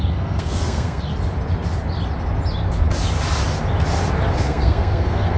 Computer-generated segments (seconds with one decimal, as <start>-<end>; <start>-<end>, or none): 0.0-1.1; 4.3-5.4